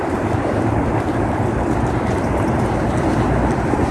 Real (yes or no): no